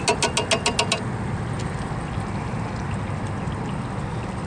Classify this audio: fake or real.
real